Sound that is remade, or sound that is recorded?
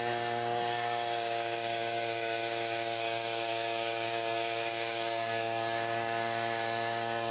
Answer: remade